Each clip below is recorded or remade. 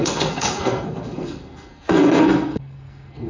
remade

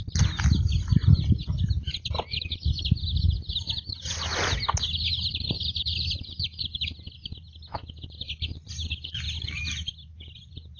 recorded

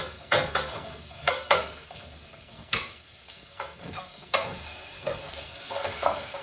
remade